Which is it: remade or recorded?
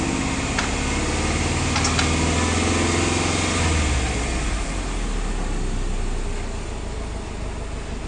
recorded